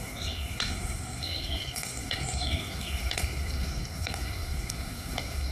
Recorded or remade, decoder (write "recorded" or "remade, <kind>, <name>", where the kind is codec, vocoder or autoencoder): remade, codec, SNAC